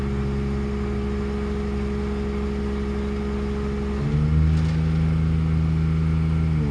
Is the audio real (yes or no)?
yes